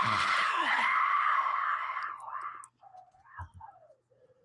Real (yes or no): yes